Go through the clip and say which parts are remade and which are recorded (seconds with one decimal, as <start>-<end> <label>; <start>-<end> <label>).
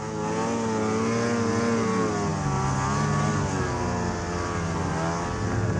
0.0-5.8 recorded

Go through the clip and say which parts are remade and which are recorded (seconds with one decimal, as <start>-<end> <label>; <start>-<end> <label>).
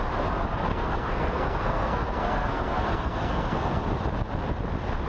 0.0-0.7 recorded; 0.7-3.8 remade; 3.8-5.1 recorded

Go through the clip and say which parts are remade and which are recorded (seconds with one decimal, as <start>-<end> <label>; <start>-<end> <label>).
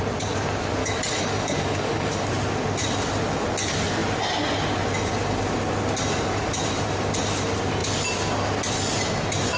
0.0-0.8 recorded; 0.8-2.3 remade; 2.3-9.6 recorded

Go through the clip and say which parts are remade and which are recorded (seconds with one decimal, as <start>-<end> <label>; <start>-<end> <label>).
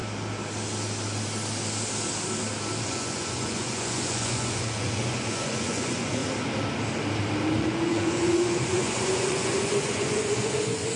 0.0-2.8 recorded; 2.8-6.2 remade; 6.2-7.6 recorded; 7.6-11.0 remade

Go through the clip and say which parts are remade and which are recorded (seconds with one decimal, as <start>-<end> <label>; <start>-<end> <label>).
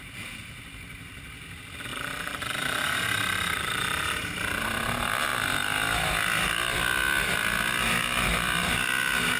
0.0-1.9 recorded; 1.9-4.6 remade; 4.6-9.4 recorded